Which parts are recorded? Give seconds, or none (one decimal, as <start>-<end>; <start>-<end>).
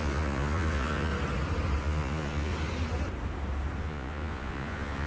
1.1-1.8; 2.5-3.8